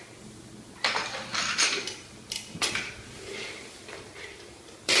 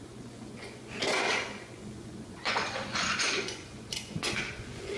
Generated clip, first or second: second